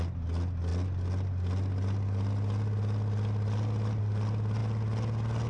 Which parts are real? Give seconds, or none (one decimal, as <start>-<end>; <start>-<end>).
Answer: 0.0-5.5